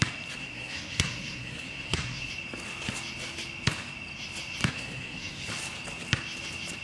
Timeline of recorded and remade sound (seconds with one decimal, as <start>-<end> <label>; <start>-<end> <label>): 0.0-0.4 recorded; 0.4-2.3 remade; 2.3-4.6 recorded; 4.6-5.5 remade; 5.5-6.8 recorded